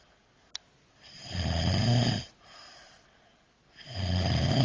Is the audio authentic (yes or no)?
yes